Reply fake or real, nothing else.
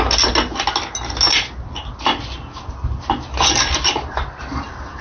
real